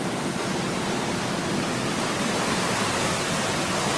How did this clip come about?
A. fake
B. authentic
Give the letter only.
B